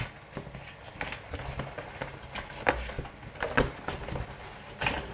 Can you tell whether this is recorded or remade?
recorded